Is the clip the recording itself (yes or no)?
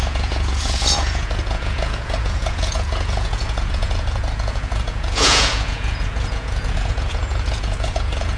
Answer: no